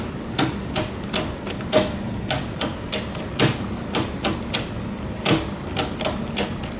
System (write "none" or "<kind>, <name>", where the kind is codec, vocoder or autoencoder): none